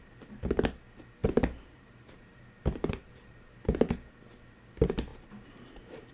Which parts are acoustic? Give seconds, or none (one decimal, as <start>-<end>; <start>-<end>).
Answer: 0.0-1.2; 3.9-6.1

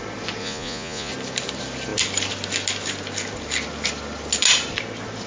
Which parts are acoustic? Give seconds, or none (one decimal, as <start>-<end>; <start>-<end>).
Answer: 0.0-0.4; 1.1-5.3